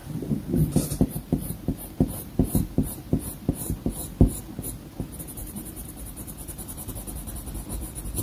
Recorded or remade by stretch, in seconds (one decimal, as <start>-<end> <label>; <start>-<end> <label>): 0.0-3.5 remade; 3.5-5.4 recorded; 5.4-6.9 remade; 6.9-8.2 recorded